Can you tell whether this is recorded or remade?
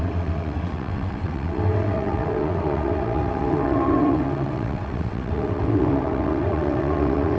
remade